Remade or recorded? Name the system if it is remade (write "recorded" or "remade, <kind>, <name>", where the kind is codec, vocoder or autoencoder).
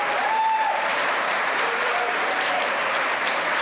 remade, vocoder, BigVGAN v2